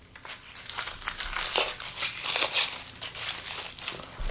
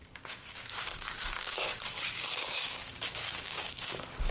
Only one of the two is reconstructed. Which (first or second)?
second